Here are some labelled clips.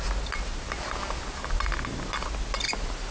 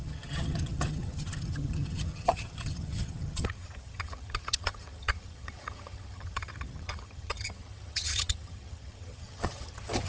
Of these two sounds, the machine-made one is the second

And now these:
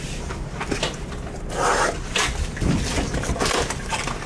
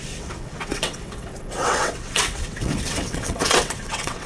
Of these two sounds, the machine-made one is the second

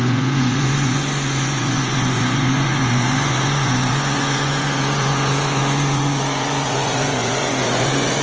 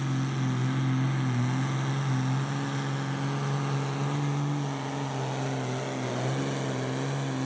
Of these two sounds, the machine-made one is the first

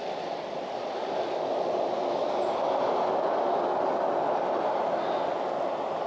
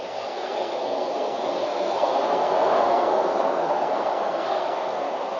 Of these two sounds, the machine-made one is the second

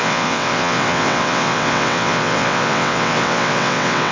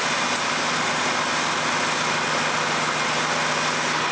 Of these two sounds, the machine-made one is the first